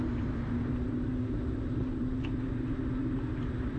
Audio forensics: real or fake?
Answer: real